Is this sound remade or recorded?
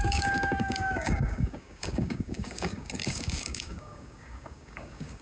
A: remade